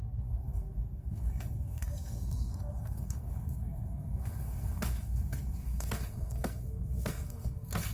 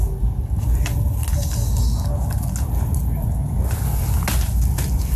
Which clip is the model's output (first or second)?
first